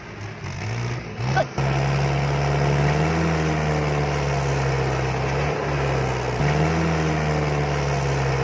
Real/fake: real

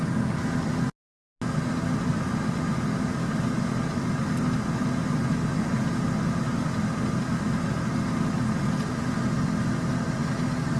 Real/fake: real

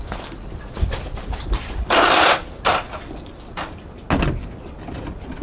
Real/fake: real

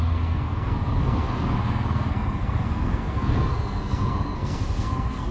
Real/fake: fake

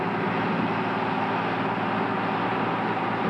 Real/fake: real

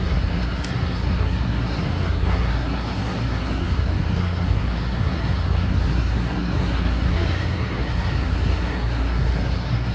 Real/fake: fake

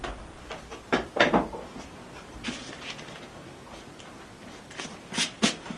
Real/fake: fake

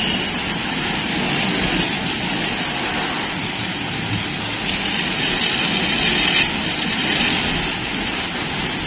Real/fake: real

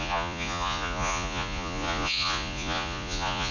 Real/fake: fake